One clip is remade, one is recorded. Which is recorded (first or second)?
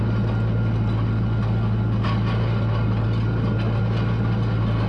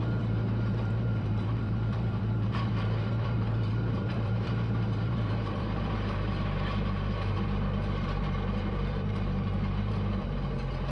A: first